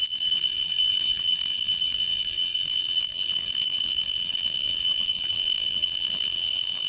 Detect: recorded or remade remade